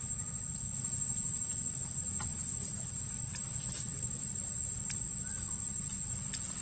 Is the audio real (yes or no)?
yes